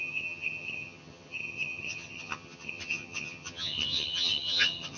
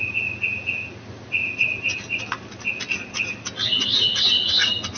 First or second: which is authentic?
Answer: second